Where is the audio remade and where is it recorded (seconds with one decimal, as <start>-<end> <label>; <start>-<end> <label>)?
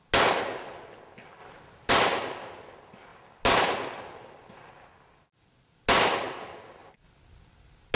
0.0-8.0 recorded